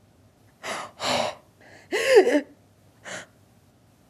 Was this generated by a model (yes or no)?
no